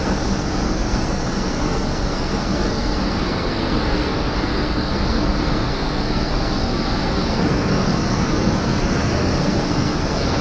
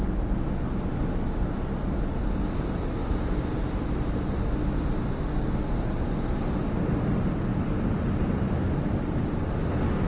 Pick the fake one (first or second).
first